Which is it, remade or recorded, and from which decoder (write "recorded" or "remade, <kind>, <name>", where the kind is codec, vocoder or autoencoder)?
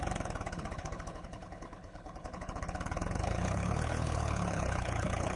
remade, codec, HILCodec